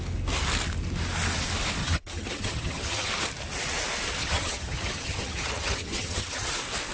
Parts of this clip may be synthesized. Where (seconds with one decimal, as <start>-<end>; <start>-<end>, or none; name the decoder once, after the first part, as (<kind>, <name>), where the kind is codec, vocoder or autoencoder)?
1.8-3.1 (vocoder, HiFi-GAN); 4.2-6.5